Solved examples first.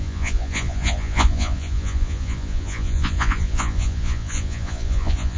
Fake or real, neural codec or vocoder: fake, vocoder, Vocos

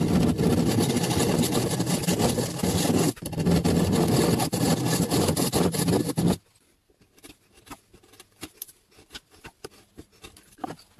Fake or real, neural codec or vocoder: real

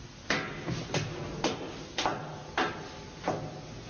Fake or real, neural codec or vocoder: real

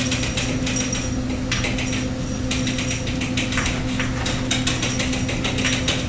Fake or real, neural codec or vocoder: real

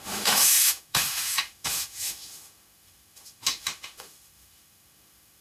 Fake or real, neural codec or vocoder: fake, autoencoder, DAC-VAE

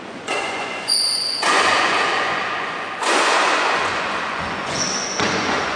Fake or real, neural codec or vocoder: fake, vocoder, Vocos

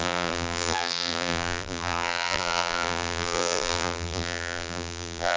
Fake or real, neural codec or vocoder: fake, vocoder, BigVGAN v2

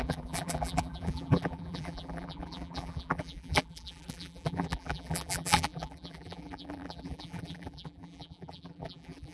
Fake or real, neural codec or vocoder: fake, vocoder, BigVGAN v2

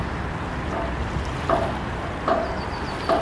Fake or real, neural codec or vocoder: real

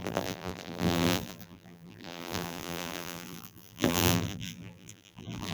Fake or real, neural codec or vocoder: fake, vocoder, BigVGAN v2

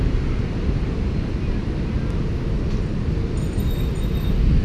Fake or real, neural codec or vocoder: real